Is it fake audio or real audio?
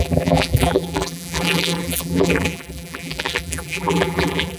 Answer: fake